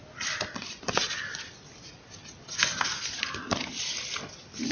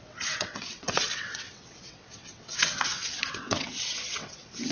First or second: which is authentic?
first